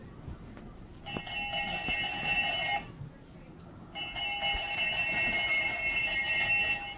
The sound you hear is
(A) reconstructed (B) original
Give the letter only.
B